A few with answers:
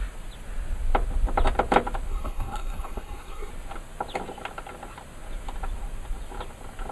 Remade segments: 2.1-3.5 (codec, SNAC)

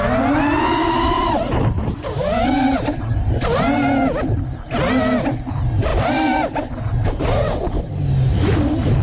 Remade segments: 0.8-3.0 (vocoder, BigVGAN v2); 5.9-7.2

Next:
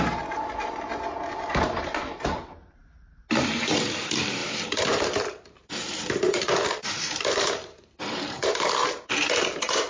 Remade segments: 0.0-2.8 (vocoder, BigVGAN v2); 3.4-9.9

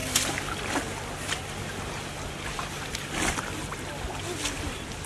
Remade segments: none

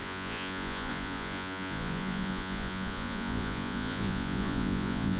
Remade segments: 0.0-5.2 (vocoder, Vocos)

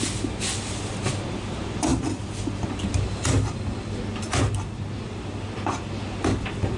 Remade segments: none

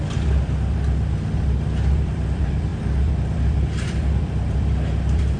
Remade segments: 0.0-5.4 (vocoder, BigVGAN v2)